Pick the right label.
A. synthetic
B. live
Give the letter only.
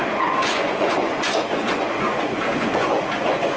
A